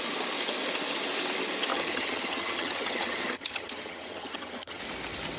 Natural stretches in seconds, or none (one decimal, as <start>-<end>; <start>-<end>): 0.0-1.7; 4.8-5.4